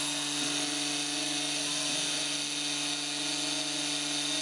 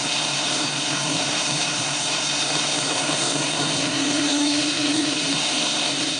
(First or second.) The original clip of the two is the first